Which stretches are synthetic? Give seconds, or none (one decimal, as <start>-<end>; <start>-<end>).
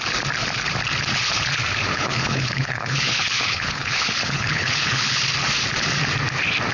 1.9-5.2